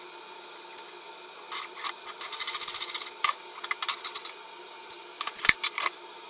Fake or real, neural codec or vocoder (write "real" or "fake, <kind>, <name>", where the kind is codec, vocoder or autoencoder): real